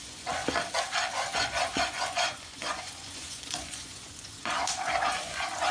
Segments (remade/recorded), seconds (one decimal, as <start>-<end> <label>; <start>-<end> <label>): 0.0-0.4 remade; 0.4-1.1 recorded; 1.1-5.7 remade